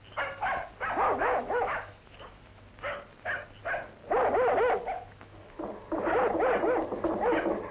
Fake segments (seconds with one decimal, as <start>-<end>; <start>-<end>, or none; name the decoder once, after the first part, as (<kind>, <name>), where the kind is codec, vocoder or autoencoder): 1.2-2.7 (autoencoder, DAC-VAE); 4.8-5.6